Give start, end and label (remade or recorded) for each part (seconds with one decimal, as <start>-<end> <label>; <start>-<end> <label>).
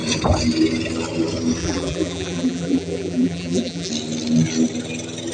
0.0-1.6 recorded; 1.6-3.9 remade; 3.9-5.3 recorded